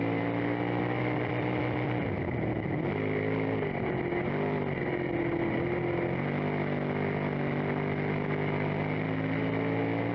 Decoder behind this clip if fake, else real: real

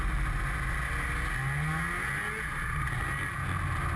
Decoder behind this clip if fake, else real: real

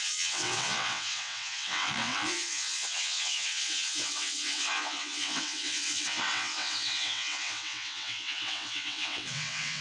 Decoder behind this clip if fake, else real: fake, vocoder, WaveNeXt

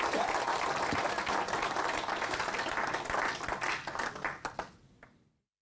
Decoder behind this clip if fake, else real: real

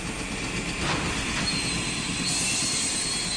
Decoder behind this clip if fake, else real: real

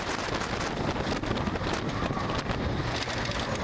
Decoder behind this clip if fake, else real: real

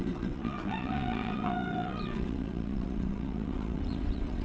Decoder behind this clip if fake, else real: fake, vocoder, WaveNeXt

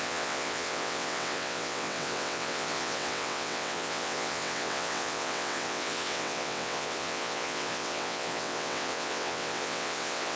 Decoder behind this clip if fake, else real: fake, vocoder, WaveNeXt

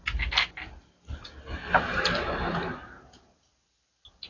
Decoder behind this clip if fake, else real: real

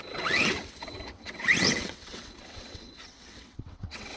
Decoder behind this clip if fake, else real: fake, vocoder, WaveNeXt